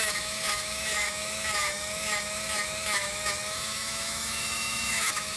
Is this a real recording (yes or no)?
no